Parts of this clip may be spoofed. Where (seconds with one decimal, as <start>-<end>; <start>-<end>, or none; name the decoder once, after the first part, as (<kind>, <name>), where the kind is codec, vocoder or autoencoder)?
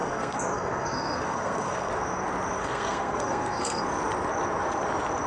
0.0-1.9 (codec, SNAC); 2.6-3.8